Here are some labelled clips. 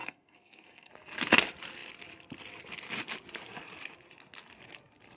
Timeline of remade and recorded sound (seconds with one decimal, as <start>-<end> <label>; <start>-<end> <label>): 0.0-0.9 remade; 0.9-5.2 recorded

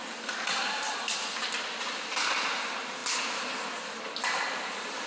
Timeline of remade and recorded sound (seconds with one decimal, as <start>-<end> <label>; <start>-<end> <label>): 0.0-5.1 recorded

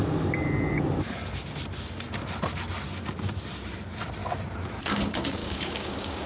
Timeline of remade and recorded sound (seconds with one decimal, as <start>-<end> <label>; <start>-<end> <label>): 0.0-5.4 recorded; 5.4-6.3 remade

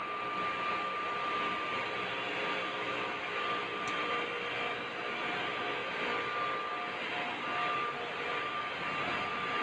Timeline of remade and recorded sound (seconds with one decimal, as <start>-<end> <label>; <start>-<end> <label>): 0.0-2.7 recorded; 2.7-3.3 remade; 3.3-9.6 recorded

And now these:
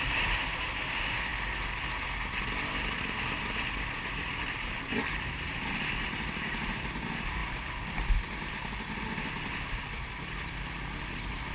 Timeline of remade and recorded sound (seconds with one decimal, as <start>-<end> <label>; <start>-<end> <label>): 0.0-11.5 recorded